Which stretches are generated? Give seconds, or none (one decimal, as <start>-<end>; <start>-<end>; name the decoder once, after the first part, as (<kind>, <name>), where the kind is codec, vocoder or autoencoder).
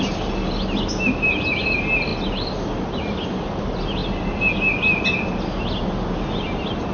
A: none